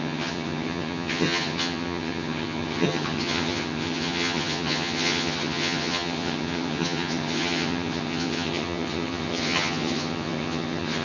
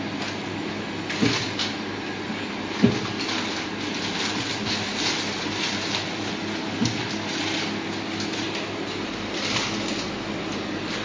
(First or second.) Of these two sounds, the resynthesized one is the first